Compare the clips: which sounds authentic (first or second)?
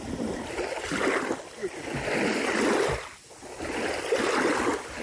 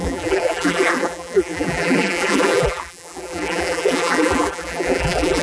first